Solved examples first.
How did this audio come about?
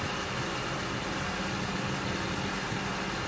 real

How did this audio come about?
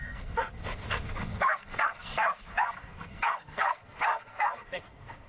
fake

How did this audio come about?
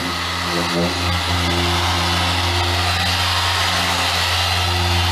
real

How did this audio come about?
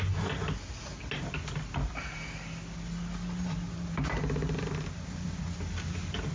real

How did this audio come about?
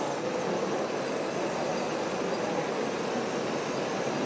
real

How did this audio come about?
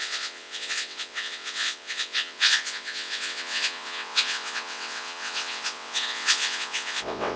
fake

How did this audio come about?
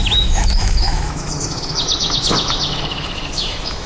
fake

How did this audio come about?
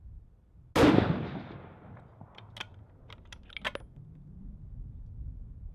real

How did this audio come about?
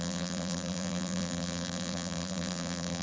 fake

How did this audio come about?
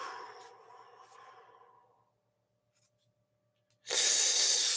real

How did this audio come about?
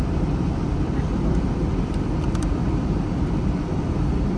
fake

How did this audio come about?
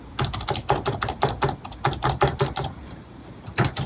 real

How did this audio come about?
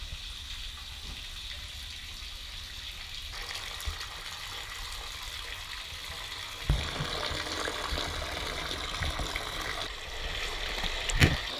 real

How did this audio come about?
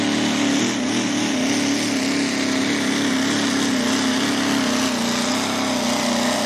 real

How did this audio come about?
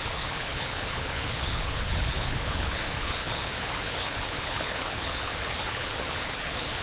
fake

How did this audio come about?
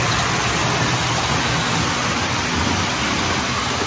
real